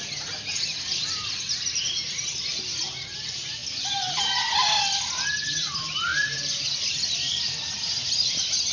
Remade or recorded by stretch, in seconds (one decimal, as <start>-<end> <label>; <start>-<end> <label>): 0.0-8.7 recorded